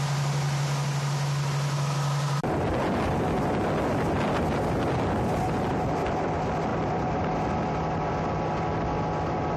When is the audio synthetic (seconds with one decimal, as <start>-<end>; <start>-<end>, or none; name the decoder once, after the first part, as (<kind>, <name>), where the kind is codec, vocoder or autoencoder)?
none